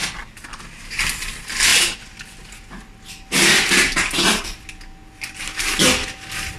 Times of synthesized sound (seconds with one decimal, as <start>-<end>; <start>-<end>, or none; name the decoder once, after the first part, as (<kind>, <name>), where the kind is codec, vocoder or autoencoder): none